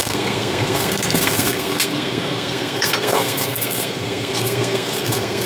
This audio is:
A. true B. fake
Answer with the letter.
B